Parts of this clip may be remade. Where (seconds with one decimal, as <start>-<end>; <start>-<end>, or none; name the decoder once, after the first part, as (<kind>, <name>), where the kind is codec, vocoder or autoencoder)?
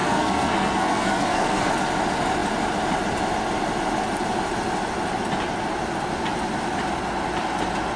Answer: 0.0-1.7 (codec, SNAC)